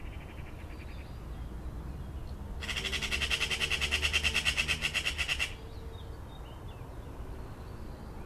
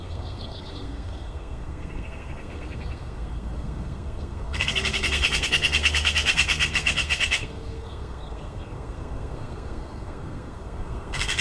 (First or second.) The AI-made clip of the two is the second